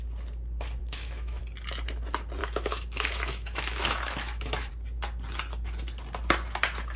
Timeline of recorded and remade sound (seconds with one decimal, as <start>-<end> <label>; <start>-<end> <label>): 0.0-0.8 recorded; 0.8-1.4 remade; 1.4-2.4 recorded; 2.4-4.7 remade; 4.7-7.0 recorded